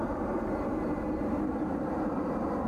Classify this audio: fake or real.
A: fake